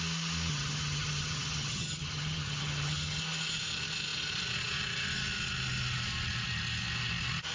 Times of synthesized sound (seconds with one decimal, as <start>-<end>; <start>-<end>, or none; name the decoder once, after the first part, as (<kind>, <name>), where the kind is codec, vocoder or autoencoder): 0.5-3.2 (vocoder, HiFi-GAN)